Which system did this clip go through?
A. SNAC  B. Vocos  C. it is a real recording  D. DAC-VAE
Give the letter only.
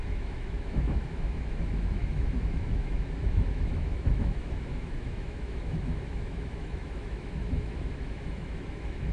D